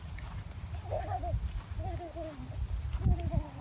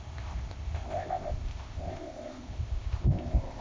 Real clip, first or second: first